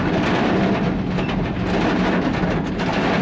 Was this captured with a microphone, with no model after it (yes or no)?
yes